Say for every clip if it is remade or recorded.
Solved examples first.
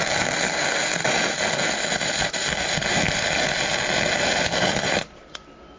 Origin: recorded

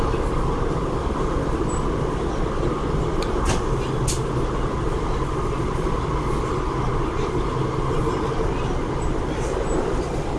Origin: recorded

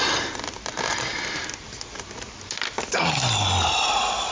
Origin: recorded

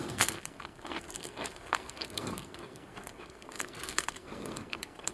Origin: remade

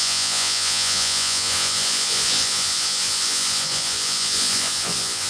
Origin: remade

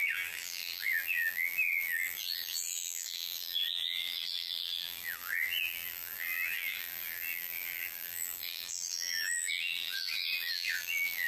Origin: remade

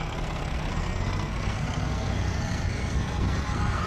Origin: remade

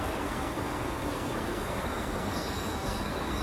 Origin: remade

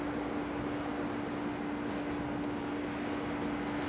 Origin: recorded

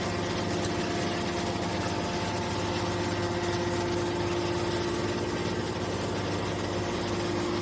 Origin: recorded